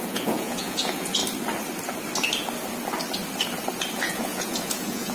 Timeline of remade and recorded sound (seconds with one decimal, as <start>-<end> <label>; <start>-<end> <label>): 0.0-1.2 remade; 1.2-4.0 recorded; 4.0-5.1 remade